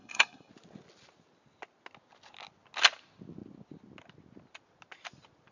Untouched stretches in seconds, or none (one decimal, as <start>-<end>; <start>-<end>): 0.5-5.5